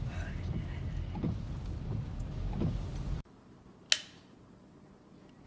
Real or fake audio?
real